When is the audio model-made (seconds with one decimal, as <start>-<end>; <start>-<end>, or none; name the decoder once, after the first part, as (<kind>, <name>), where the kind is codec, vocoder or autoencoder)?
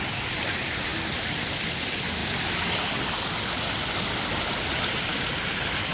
none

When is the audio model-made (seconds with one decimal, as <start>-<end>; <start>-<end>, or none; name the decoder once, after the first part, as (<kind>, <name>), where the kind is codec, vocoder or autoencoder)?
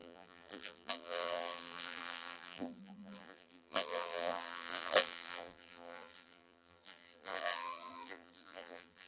0.0-9.1 (vocoder, BigVGAN v2)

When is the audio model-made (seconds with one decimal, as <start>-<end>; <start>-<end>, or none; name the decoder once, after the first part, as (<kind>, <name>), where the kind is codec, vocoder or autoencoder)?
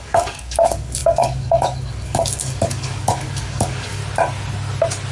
0.0-4.0 (codec, DAC)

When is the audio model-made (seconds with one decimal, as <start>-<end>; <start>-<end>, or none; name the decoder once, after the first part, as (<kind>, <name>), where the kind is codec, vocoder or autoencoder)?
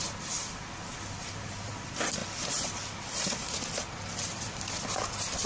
0.0-2.2 (vocoder, BigVGAN v2)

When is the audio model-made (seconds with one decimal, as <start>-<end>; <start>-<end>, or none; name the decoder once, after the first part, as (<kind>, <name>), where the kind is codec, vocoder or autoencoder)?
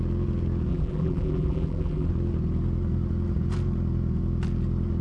0.7-2.1 (vocoder, BigVGAN v2)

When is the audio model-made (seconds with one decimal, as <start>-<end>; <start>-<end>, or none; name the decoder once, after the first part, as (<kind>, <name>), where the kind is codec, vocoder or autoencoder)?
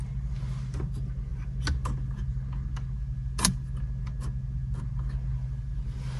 none